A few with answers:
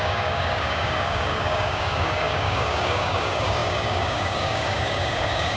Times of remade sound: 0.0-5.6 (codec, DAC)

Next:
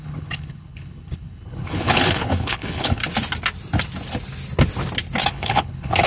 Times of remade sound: 0.0-3.0 (codec, HILCodec); 5.3-6.1